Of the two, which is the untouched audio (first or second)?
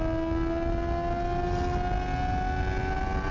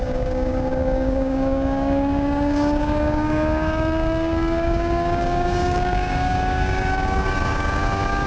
first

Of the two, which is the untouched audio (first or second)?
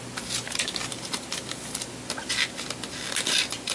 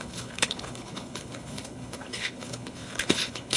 first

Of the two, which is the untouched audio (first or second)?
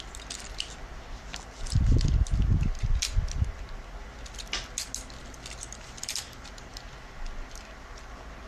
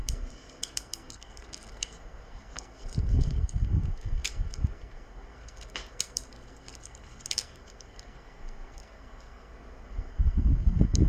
first